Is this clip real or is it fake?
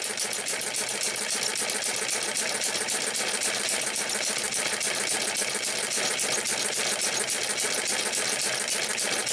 real